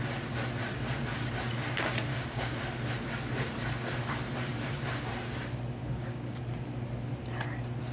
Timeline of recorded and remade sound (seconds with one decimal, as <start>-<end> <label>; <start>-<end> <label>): 0.0-2.1 recorded; 2.1-2.6 remade; 2.6-5.8 recorded; 5.8-6.4 remade; 6.4-7.9 recorded